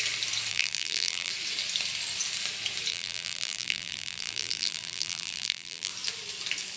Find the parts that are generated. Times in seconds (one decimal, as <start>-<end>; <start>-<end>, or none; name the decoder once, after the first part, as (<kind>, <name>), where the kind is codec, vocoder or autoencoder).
0.5-1.3 (vocoder, BigVGAN v2); 2.9-5.9